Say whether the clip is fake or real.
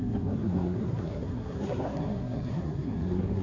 fake